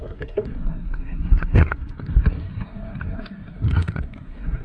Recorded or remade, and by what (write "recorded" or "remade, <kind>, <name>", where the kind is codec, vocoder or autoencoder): remade, codec, SNAC